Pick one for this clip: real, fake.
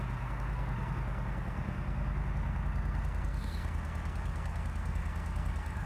fake